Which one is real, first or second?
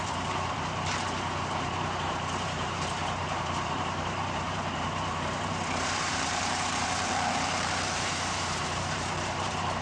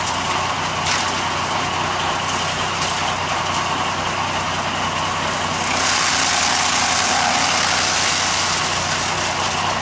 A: second